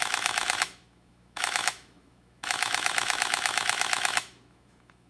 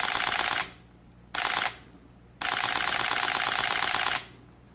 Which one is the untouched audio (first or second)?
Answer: second